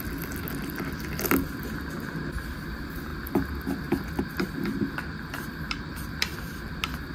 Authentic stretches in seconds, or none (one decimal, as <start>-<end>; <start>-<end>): 0.0-7.1